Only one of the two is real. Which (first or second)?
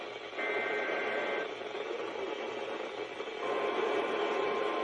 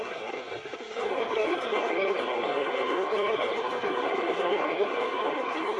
first